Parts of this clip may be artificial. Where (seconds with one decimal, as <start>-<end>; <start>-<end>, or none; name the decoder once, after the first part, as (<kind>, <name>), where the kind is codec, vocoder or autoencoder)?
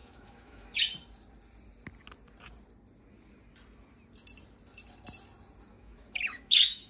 0.0-0.8 (autoencoder, DAC-VAE); 5.7-6.9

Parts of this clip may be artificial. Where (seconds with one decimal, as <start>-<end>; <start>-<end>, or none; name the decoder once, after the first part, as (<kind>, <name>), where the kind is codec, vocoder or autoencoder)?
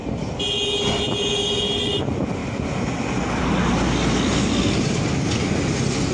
none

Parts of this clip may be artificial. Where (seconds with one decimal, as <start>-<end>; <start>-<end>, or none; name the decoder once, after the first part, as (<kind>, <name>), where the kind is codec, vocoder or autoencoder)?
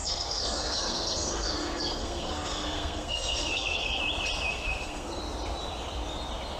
0.0-4.0 (codec, SNAC); 4.5-5.2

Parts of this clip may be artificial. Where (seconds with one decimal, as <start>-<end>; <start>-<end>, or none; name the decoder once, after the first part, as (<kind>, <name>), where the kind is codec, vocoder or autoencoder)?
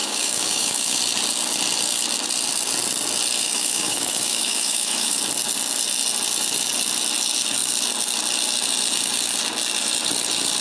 0.0-1.0 (autoencoder, DAC-VAE); 3.4-5.2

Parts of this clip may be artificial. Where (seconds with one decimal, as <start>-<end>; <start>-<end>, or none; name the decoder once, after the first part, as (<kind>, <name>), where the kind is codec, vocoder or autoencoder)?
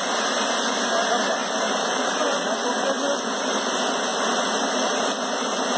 none